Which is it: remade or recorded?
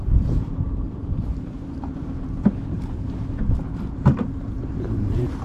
remade